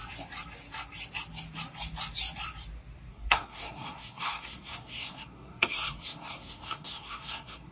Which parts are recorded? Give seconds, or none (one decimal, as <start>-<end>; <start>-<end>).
0.0-3.1